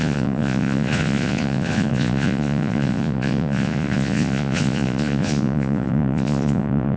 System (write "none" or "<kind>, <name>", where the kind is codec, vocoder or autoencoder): vocoder, Vocos